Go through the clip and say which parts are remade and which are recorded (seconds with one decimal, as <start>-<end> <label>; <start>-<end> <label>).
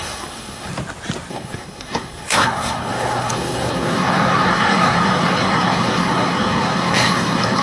0.0-0.7 remade; 0.7-1.3 recorded; 1.3-7.6 remade